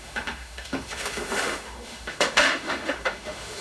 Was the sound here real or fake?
fake